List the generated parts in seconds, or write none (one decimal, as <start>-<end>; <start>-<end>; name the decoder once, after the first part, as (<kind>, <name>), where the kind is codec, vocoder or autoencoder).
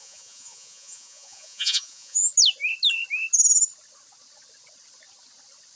0.0-2.3 (vocoder, Vocos)